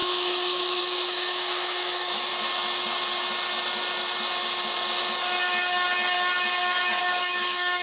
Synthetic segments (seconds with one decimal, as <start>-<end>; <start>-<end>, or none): 0.0-2.3; 7.0-7.8